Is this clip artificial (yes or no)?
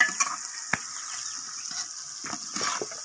no